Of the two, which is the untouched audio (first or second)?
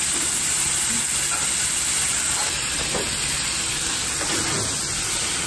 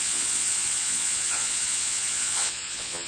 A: first